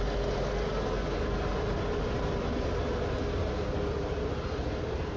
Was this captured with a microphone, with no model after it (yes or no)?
yes